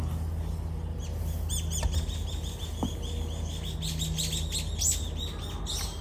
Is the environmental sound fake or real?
real